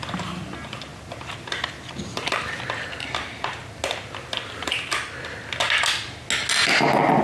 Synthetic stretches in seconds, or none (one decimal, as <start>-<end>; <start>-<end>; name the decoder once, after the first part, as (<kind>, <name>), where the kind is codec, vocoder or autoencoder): none